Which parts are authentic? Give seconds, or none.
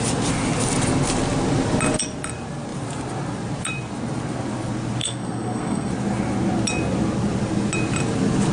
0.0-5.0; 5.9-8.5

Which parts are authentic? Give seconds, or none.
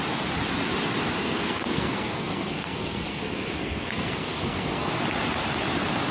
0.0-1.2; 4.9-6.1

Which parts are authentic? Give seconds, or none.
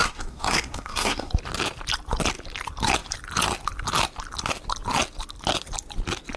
1.3-6.4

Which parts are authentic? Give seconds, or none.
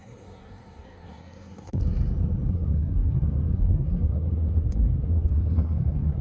1.8-2.5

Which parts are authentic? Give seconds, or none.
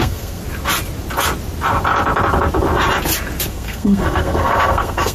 0.4-3.5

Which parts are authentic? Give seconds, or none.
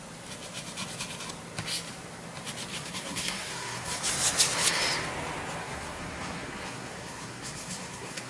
0.0-2.7; 4.1-5.6